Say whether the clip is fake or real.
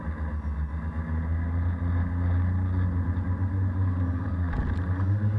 real